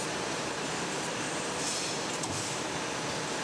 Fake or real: fake